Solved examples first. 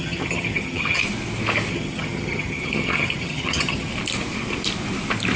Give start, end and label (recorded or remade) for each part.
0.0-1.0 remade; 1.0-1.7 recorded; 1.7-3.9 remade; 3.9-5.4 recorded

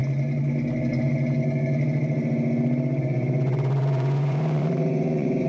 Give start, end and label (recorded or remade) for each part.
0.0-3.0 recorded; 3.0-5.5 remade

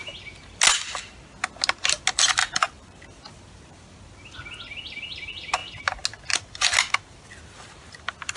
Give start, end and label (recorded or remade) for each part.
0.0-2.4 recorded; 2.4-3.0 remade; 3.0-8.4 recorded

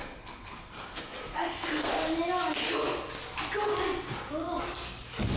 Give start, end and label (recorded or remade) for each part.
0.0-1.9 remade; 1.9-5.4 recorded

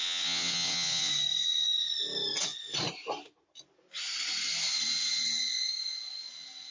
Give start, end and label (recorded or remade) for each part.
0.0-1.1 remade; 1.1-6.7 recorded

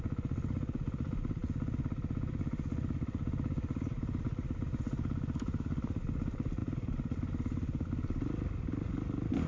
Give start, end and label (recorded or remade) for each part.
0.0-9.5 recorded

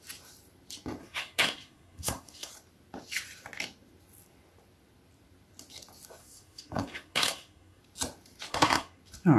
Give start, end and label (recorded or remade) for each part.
0.0-1.0 recorded; 1.0-2.5 remade; 2.5-6.2 recorded; 6.2-7.8 remade; 7.8-8.5 recorded; 8.5-9.0 remade; 9.0-9.4 recorded